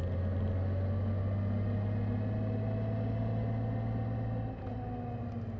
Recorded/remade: recorded